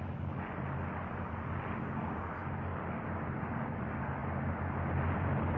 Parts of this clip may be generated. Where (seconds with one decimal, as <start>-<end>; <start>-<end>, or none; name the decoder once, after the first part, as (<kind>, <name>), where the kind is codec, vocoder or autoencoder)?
none